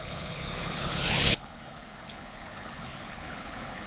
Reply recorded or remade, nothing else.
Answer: remade